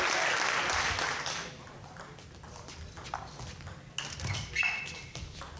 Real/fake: real